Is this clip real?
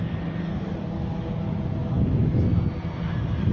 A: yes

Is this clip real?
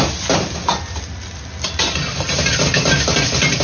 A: yes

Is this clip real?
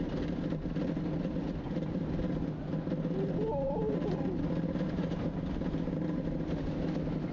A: yes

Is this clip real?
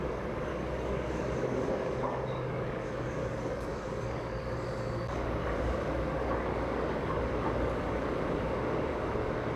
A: no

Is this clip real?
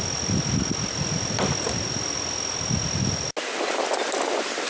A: yes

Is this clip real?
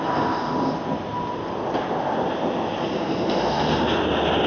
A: yes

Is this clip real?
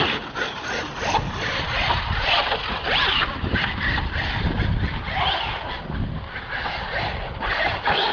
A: yes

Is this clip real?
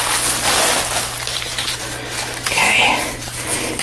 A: yes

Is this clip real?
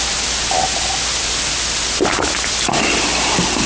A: yes